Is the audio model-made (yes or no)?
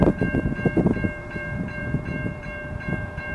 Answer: yes